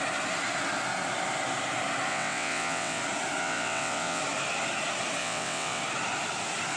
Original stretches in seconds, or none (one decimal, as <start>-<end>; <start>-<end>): 0.0-2.1; 3.0-3.4; 4.2-5.2; 5.8-6.8